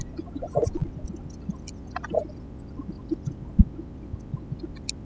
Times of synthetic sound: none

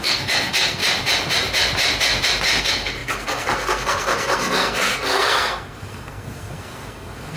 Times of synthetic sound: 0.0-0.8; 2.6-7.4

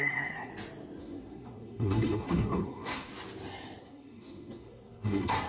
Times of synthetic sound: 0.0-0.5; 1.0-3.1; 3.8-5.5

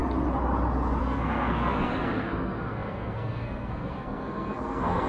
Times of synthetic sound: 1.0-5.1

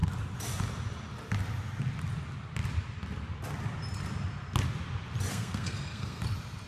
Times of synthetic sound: 5.3-6.2

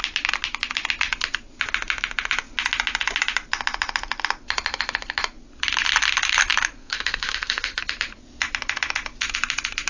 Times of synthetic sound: 6.8-7.8

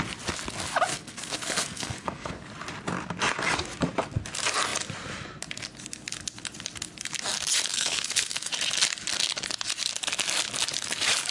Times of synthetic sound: 0.9-2.3; 7.7-8.5